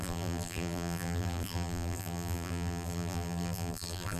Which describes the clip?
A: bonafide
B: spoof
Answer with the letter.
B